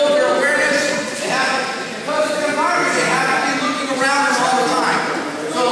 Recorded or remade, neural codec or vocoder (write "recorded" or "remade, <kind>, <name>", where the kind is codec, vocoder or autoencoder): recorded